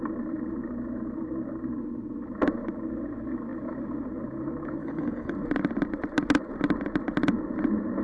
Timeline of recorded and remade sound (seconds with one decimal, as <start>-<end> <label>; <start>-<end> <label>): 0.0-4.8 recorded; 4.8-5.3 remade; 5.3-8.0 recorded